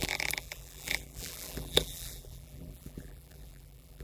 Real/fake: fake